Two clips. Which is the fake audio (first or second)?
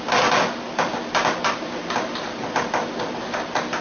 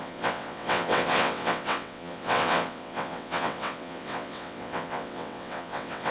second